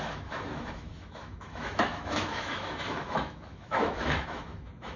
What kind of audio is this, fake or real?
fake